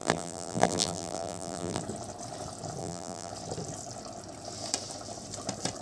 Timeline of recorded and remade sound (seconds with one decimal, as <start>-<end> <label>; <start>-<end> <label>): 0.0-1.8 remade; 1.8-2.8 recorded; 2.8-3.3 remade; 3.3-5.8 recorded